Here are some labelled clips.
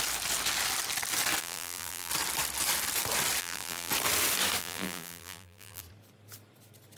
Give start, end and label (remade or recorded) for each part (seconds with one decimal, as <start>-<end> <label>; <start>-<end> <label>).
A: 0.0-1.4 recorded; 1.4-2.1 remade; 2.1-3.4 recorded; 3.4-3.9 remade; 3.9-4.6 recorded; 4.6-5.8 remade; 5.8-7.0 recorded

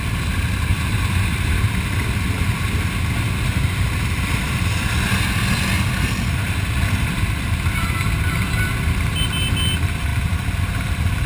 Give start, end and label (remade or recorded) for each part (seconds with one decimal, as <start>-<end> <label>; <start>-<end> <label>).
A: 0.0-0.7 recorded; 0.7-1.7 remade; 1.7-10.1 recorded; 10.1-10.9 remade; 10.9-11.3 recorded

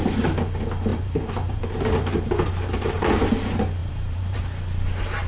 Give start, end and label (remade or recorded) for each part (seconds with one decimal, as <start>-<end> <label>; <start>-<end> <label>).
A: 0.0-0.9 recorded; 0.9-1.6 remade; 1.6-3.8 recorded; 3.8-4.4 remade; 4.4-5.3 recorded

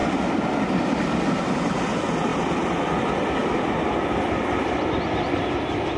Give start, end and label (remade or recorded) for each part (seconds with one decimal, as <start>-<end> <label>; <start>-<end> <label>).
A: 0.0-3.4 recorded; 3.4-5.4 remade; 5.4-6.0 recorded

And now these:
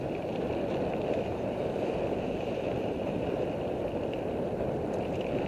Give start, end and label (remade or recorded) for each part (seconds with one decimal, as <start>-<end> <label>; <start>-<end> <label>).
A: 0.0-1.3 recorded; 1.3-3.4 remade; 3.4-5.5 recorded

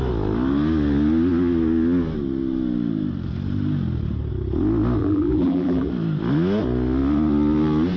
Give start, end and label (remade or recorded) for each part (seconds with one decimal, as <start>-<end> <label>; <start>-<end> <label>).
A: 0.0-5.0 recorded; 5.0-5.9 remade; 5.9-8.0 recorded

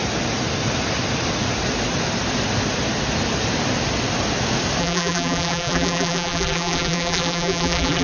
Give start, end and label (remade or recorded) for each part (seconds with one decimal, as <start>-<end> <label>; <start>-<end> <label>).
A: 0.0-4.8 recorded; 4.8-8.0 remade

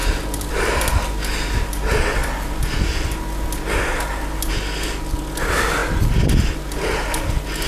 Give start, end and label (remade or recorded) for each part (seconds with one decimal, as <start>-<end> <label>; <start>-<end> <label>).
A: 0.0-7.7 recorded